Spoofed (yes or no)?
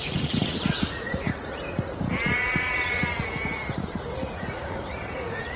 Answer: yes